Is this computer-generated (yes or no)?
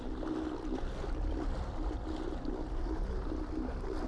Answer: no